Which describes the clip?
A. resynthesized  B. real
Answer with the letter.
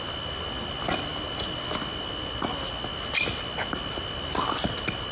B